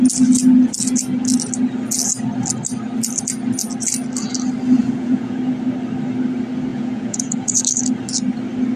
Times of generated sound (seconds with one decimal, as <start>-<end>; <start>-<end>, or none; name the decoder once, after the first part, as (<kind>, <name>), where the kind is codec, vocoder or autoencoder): 4.8-5.4 (vocoder, Vocos); 6.7-7.6